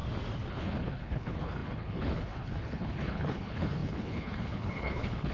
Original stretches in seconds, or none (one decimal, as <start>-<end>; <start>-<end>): 0.0-0.5